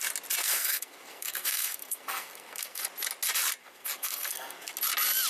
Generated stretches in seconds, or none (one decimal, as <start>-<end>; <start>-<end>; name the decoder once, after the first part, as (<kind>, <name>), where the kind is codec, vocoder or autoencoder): 0.4-2.8 (codec, SNAC); 3.6-4.7